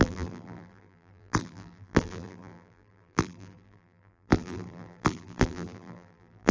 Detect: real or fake fake